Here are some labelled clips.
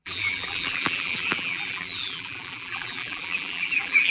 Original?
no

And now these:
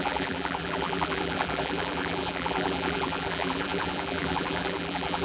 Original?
no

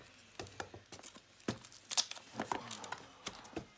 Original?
yes